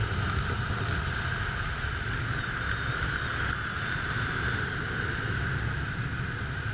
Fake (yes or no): no